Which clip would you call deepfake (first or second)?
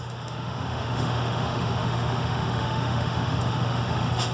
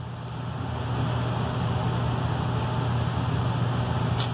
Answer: first